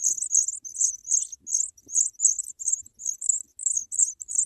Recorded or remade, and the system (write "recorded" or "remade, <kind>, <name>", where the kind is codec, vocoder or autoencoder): recorded